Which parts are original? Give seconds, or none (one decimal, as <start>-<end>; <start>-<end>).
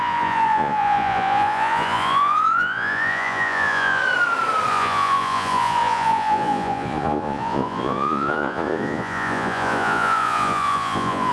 4.0-4.7